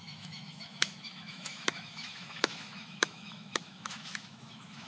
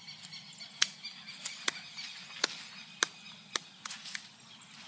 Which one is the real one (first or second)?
second